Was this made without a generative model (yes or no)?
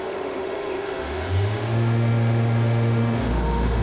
no